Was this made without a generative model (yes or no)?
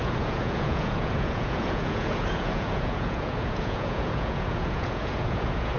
no